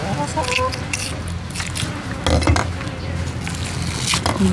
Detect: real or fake real